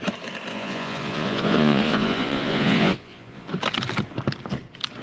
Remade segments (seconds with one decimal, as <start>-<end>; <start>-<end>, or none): 0.5-3.5